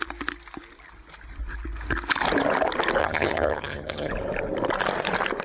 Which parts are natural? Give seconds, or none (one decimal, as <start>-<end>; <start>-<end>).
0.0-3.0; 4.1-5.4